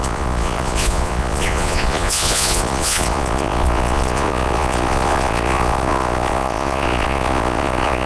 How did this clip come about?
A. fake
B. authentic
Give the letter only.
A